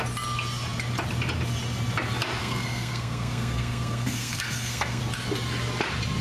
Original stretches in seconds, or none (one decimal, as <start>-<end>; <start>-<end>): 0.0-2.4; 5.0-6.2